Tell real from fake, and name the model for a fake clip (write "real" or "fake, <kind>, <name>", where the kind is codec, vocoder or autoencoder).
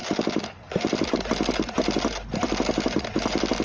real